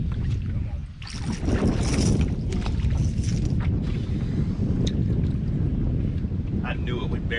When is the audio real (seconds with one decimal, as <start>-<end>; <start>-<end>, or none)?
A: 0.0-7.4